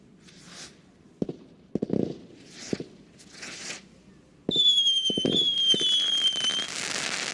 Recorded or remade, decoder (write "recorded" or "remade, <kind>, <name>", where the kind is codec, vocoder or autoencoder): recorded